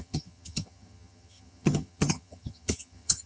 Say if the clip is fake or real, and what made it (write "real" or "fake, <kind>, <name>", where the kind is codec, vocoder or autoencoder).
fake, vocoder, HiFi-GAN